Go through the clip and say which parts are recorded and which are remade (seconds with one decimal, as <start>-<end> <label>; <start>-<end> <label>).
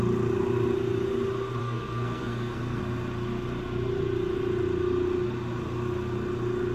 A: 0.0-1.6 recorded; 1.6-2.8 remade; 2.8-6.7 recorded